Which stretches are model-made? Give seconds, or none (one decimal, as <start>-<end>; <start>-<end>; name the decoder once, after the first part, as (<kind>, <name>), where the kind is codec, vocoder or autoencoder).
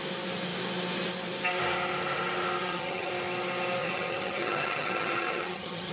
2.6-3.1 (vocoder, HiFi-GAN); 3.8-5.9